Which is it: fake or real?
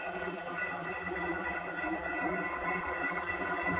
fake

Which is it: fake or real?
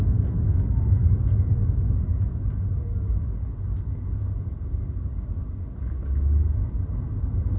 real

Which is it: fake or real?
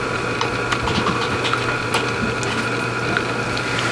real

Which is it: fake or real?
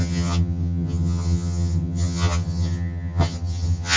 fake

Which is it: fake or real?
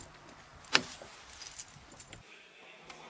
real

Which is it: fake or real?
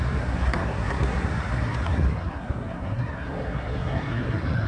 fake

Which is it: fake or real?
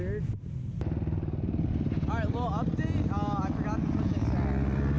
real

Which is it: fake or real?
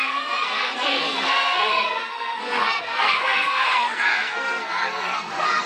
fake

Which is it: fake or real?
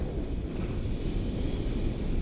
real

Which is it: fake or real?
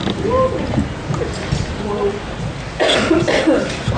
real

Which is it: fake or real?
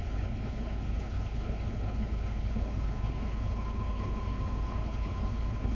fake